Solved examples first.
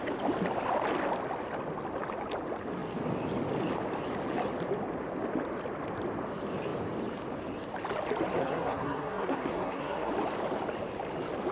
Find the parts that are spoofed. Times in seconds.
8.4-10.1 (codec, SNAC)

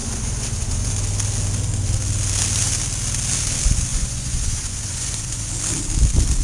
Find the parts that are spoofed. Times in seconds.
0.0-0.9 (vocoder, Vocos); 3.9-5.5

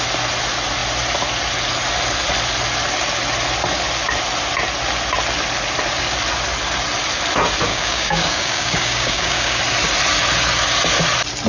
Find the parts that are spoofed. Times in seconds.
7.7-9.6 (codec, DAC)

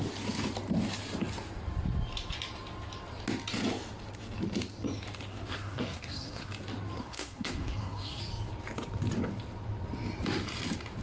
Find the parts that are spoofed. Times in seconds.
5.3-6.5 (codec, SNAC); 7.0-8.2

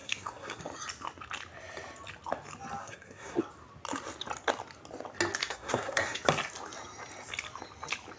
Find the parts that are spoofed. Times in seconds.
0.0-0.6 (codec, SNAC); 2.8-3.4; 5.4-6.2